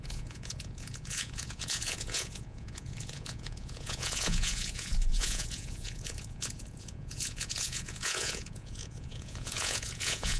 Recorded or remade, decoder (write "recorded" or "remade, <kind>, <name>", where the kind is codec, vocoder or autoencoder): remade, vocoder, Vocos